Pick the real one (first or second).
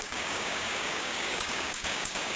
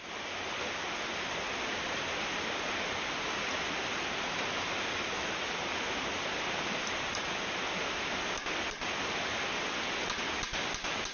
second